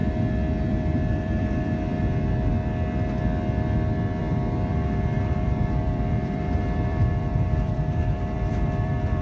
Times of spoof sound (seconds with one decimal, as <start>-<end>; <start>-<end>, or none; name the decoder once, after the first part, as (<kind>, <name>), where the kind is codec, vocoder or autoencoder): 0.6-2.5 (vocoder, BigVGAN v2); 4.2-9.2